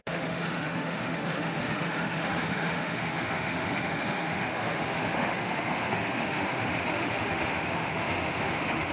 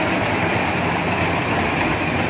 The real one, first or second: second